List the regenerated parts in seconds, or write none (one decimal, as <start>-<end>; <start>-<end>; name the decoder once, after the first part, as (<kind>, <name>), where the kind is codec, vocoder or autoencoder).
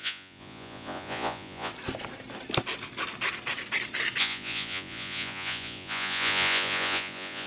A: 0.0-1.7 (vocoder, Vocos); 4.2-7.5